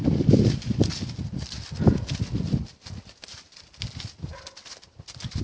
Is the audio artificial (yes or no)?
no